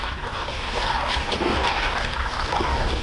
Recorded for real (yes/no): no